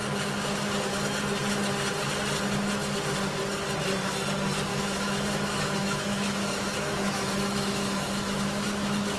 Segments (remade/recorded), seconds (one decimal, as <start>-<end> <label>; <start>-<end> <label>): 0.0-4.7 recorded; 4.7-9.2 remade